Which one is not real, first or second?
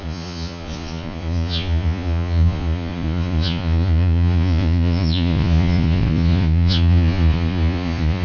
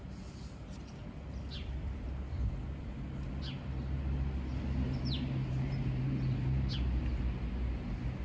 first